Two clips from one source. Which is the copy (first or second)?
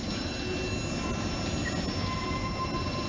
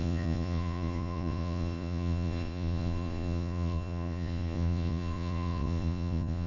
second